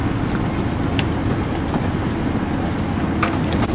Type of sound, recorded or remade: recorded